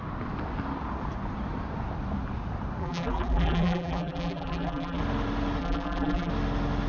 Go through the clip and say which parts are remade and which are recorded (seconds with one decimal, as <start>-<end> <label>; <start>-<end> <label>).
0.0-2.8 recorded; 2.8-5.0 remade; 5.0-5.6 recorded; 5.6-6.3 remade; 6.3-6.9 recorded